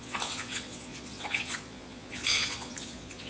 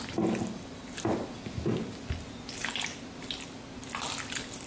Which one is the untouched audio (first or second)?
second